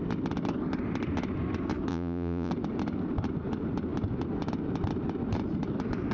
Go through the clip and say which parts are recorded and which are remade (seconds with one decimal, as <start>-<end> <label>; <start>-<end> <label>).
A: 0.0-1.9 recorded; 1.9-2.5 remade; 2.5-6.1 recorded